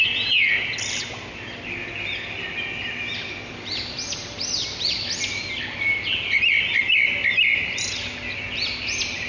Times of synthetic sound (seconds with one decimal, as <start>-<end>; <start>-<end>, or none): none